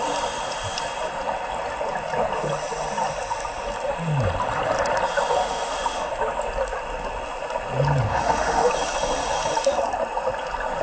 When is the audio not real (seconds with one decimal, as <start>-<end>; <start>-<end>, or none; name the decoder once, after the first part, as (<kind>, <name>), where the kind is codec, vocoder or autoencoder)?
5.4-6.1 (autoencoder, DAC-VAE); 8.1-8.7